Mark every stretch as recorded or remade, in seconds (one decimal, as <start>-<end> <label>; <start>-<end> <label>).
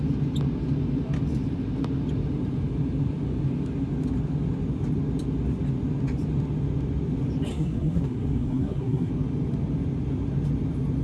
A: 0.0-7.5 recorded; 7.5-9.1 remade; 9.1-11.0 recorded